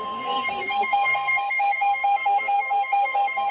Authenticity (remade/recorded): remade